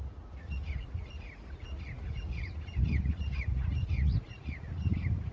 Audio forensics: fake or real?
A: fake